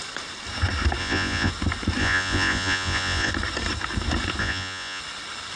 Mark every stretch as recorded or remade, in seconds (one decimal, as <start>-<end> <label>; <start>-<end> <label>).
0.0-1.0 recorded; 1.0-1.5 remade; 1.5-2.0 recorded; 2.0-3.3 remade; 3.3-4.4 recorded; 4.4-5.0 remade; 5.0-5.6 recorded